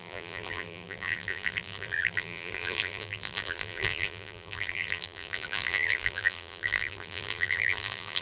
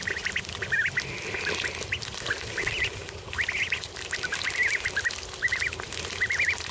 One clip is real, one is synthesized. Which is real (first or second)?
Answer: second